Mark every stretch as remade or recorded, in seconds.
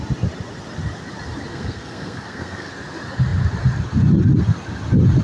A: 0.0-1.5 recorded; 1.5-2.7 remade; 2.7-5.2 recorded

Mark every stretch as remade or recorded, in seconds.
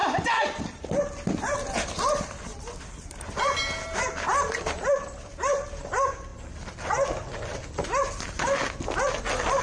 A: 0.0-0.6 recorded; 0.6-6.3 remade; 6.3-9.2 recorded; 9.2-9.6 remade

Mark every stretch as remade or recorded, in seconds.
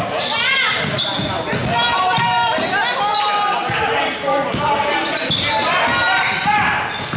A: 0.0-7.2 recorded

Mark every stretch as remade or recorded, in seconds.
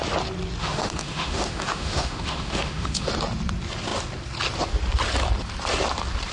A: 0.0-0.6 recorded; 0.6-3.1 remade; 3.1-6.3 recorded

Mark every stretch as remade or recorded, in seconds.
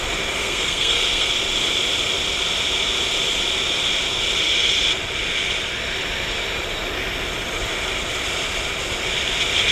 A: 0.0-0.4 recorded; 0.4-1.3 remade; 1.3-9.7 recorded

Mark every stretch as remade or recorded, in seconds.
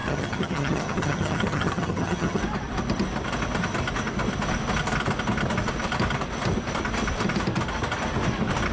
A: 0.0-2.4 remade; 2.4-8.7 recorded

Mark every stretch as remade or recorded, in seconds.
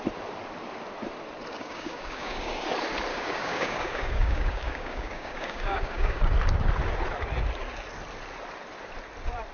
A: 0.0-1.5 recorded; 1.5-2.6 remade; 2.6-3.1 recorded; 3.1-6.2 remade; 6.2-9.5 recorded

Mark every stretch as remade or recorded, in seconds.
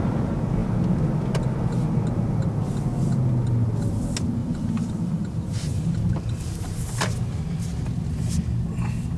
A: 0.0-4.4 recorded; 4.4-7.1 remade; 7.1-9.2 recorded